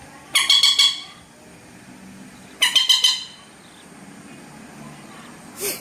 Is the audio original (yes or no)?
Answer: yes